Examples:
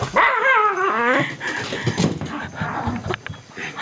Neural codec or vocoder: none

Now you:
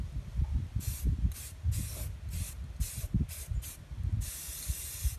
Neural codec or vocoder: none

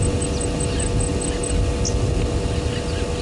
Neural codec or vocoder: none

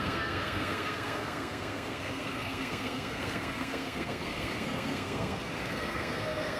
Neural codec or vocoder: codec, SNAC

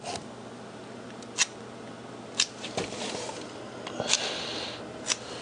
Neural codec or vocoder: none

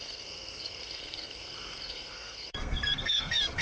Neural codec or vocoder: codec, SNAC